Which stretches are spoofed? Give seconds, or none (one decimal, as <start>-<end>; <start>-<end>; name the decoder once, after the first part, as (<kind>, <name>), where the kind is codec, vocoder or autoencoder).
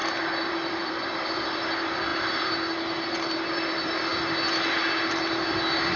0.5-2.1 (vocoder, BigVGAN v2); 3.1-4.1; 5.5-6.0